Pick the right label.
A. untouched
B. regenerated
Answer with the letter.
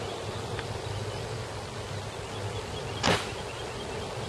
A